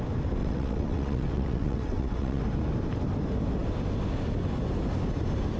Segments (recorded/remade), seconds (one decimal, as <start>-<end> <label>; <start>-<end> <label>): 0.0-0.4 recorded; 0.4-2.4 remade; 2.4-5.6 recorded